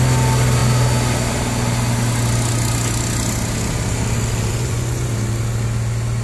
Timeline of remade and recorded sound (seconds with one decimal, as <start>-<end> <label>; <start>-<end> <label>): 0.0-4.5 recorded; 4.5-5.1 remade; 5.1-6.2 recorded